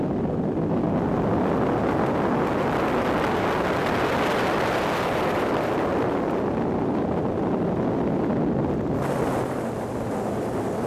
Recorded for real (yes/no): yes